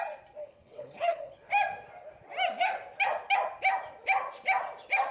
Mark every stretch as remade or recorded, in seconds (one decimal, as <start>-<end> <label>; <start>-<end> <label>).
0.0-0.4 recorded; 0.4-1.5 remade; 1.5-5.1 recorded